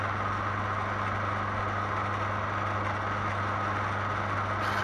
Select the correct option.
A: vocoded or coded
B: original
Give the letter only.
B